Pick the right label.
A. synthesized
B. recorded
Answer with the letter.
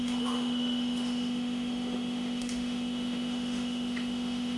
A